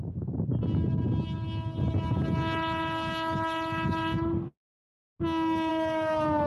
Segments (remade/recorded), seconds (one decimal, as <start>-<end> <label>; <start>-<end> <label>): 0.0-6.5 recorded

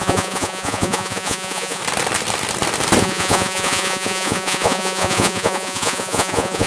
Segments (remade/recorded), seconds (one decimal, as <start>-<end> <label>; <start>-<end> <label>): 0.0-1.8 remade; 1.8-3.0 recorded; 3.0-6.7 remade

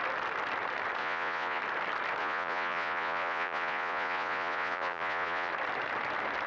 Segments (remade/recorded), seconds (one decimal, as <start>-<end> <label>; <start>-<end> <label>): 0.0-1.0 recorded; 1.0-1.6 remade; 1.6-2.2 recorded; 2.2-5.5 remade; 5.5-6.5 recorded

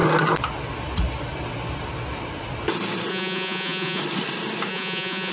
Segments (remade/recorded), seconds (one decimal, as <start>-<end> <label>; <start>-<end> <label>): 0.0-3.1 recorded; 3.1-4.0 remade; 4.0-4.7 recorded; 4.7-5.3 remade

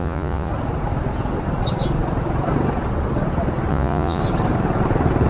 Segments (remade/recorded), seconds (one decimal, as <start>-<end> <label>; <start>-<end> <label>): 0.0-0.5 remade; 0.5-3.7 recorded; 3.7-4.2 remade; 4.2-5.3 recorded

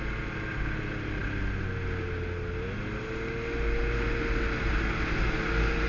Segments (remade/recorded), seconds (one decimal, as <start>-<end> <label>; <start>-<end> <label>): 0.0-5.9 recorded